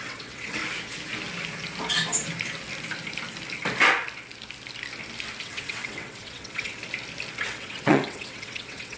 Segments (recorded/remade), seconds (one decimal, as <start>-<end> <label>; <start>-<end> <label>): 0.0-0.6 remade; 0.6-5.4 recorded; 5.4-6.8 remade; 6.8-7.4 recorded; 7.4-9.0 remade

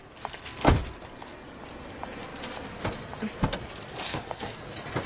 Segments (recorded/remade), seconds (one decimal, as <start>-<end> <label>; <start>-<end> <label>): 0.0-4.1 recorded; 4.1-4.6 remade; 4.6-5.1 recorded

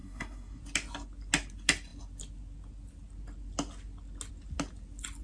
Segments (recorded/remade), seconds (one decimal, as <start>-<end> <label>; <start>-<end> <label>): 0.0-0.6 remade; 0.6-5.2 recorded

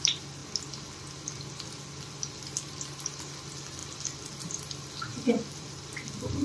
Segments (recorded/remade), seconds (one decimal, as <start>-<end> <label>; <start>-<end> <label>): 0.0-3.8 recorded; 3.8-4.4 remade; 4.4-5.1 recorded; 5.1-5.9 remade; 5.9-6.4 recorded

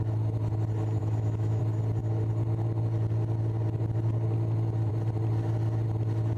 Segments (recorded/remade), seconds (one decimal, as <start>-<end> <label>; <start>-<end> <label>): 0.0-1.0 recorded; 1.0-1.6 remade; 1.6-6.4 recorded

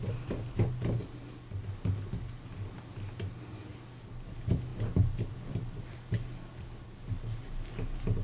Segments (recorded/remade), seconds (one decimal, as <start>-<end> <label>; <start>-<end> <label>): 0.0-8.2 recorded

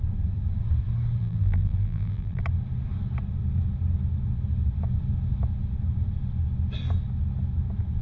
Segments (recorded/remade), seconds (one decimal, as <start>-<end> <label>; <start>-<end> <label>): 0.0-1.2 recorded; 1.2-2.4 remade; 2.4-8.0 recorded